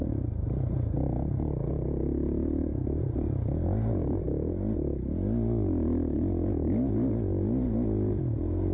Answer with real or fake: real